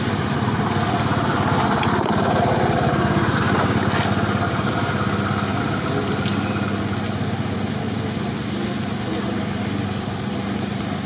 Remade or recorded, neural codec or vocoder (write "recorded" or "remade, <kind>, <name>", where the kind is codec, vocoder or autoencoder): recorded